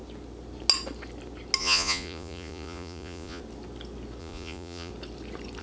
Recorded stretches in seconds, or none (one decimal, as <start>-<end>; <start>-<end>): 0.0-1.6; 3.4-4.2; 4.9-5.6

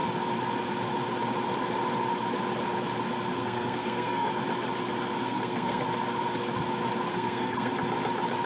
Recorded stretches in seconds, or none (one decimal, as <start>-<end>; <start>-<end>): 0.0-3.4; 4.3-5.2; 5.8-7.1; 7.7-8.5

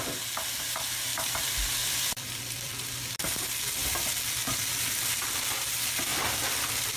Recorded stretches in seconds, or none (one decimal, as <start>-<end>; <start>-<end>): 0.0-1.1; 3.1-3.8; 5.2-6.1

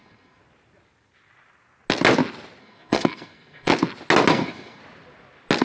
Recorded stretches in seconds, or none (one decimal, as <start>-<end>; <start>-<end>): 0.4-2.6; 3.7-4.3; 4.8-5.6

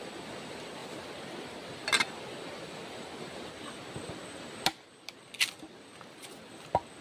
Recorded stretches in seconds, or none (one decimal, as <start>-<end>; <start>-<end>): 0.0-7.0

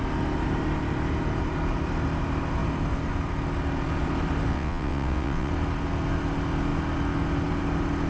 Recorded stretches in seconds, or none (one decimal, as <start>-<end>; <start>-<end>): 0.0-4.5; 5.5-8.1

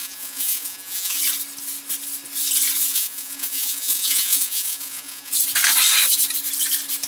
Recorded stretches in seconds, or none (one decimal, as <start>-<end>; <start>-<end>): 1.2-2.9; 5.3-7.1

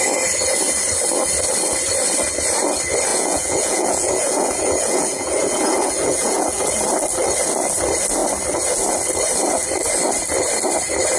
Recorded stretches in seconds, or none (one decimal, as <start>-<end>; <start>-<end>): 0.0-3.1; 6.7-11.2